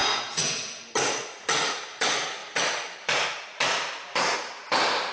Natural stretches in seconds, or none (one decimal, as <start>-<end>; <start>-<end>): 0.8-5.1